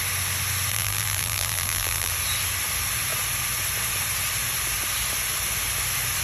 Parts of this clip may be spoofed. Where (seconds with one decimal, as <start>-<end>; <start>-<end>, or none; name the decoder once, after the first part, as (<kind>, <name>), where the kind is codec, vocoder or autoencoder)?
0.7-2.1 (vocoder, BigVGAN v2)